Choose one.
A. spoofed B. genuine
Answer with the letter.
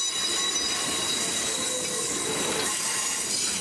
B